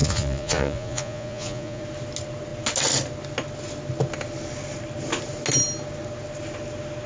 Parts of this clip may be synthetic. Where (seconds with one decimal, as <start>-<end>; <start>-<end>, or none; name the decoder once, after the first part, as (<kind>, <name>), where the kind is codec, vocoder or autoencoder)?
0.0-1.8 (vocoder, Vocos)